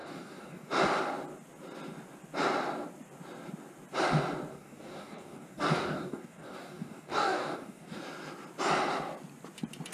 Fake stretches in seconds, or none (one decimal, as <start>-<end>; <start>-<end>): 0.0-0.7; 4.5-8.0